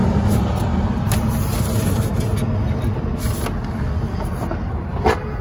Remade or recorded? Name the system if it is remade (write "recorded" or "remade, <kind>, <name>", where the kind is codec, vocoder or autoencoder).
recorded